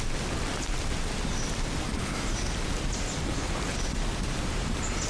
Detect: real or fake real